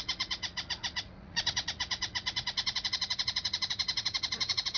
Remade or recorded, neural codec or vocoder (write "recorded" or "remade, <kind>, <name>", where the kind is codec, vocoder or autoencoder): remade, vocoder, Vocos